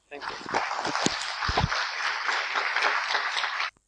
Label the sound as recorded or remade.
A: recorded